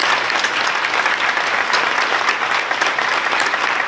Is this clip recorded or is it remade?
recorded